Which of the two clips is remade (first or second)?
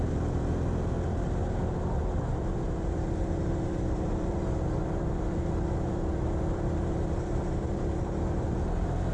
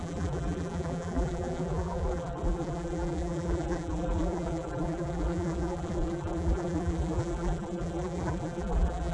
second